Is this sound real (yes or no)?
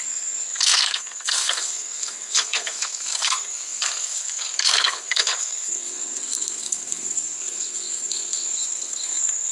no